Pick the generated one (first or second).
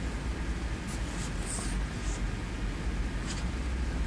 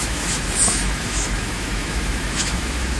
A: second